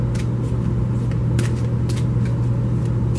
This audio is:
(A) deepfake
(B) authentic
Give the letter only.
B